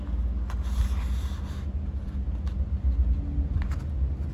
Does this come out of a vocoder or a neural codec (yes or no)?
no